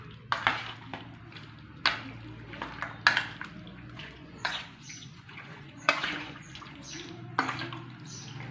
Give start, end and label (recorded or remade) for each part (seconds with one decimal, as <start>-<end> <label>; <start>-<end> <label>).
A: 0.0-3.7 recorded; 3.7-7.0 remade; 7.0-8.5 recorded